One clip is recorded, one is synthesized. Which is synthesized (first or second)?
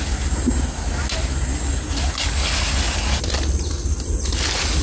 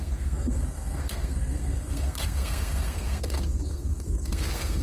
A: second